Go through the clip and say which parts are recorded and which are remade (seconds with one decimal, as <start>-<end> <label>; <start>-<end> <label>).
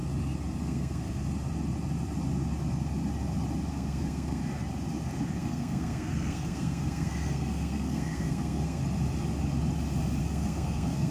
0.0-0.6 recorded; 0.6-1.2 remade; 1.2-3.7 recorded; 3.7-4.4 remade; 4.4-5.4 recorded; 5.4-8.8 remade; 8.8-10.2 recorded; 10.2-11.1 remade